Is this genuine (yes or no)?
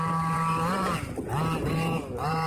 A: no